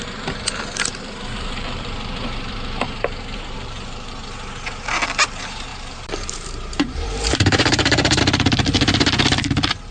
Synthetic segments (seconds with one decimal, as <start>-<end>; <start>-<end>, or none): 0.9-4.1; 5.7-8.2

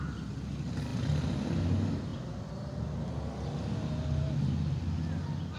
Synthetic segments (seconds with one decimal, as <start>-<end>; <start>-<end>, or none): 0.9-1.6